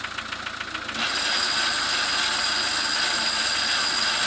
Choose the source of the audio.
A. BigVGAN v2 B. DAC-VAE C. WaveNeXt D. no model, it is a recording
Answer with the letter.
D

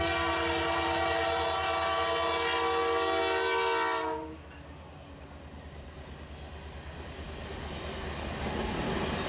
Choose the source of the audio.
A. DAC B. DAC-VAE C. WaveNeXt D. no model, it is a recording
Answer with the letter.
D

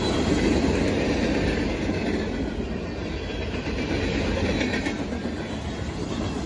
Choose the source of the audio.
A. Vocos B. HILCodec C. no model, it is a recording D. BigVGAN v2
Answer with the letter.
C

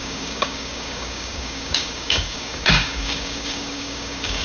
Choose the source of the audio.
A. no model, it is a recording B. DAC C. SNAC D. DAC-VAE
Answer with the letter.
B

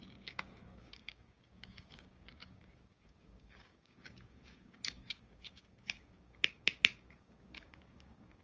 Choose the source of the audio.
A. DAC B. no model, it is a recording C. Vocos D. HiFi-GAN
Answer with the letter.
A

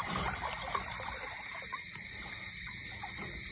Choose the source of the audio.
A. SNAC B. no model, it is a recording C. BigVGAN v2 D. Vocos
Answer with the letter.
B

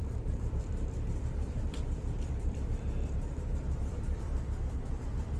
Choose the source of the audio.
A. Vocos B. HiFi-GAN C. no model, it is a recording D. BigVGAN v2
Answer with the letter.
D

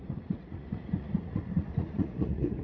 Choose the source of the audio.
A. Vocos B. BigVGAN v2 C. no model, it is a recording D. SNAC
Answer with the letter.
A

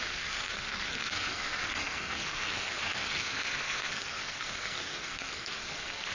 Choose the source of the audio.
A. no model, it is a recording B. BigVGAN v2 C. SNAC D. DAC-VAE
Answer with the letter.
C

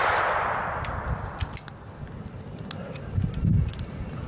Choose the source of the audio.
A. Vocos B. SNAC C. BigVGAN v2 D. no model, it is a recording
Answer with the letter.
D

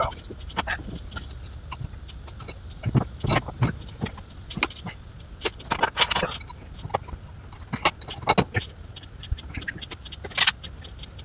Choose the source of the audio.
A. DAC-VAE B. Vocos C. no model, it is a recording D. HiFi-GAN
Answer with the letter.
C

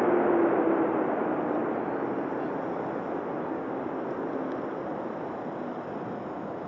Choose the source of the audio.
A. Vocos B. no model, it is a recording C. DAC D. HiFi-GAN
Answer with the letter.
B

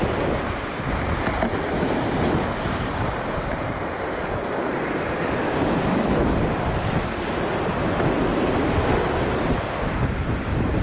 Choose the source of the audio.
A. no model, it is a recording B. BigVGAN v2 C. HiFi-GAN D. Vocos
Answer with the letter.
A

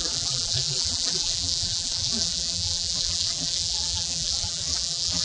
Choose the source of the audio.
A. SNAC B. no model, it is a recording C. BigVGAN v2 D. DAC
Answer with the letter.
C